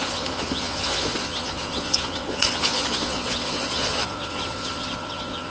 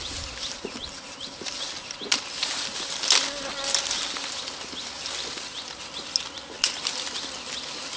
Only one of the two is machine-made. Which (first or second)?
first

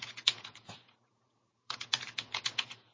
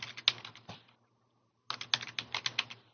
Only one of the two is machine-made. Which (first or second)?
first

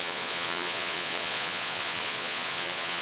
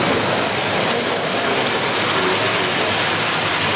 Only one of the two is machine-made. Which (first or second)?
first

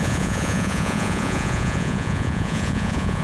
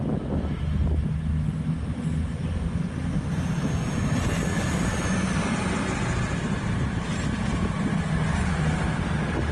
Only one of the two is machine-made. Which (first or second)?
first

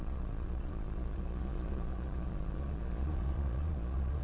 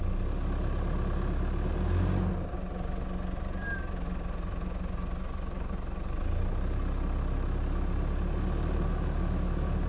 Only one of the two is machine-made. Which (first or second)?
first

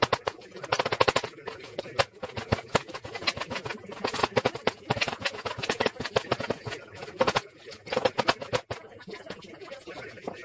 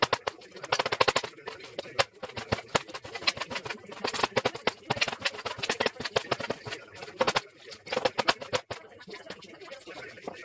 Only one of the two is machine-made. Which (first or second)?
first